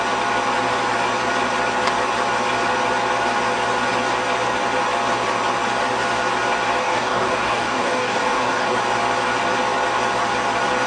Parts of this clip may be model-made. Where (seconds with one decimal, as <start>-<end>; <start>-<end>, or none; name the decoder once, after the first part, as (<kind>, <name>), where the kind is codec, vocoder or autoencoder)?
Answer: 6.8-8.8 (codec, DAC)